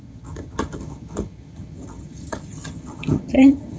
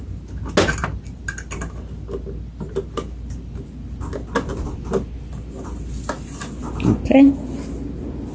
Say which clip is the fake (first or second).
first